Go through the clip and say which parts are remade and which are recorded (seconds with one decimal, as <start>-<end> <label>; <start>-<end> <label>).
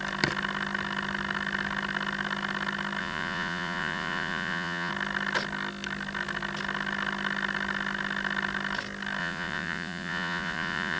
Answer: 0.0-3.0 recorded; 3.0-4.9 remade; 4.9-9.2 recorded; 9.2-11.0 remade